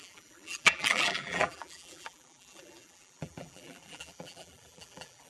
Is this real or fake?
fake